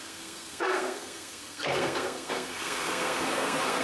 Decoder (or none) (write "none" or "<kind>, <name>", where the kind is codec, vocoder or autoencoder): codec, SNAC